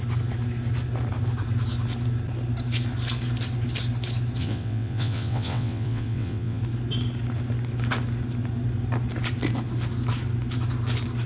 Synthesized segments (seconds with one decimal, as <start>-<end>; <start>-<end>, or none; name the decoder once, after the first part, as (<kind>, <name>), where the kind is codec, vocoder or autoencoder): 4.4-6.6 (vocoder, WaveNeXt)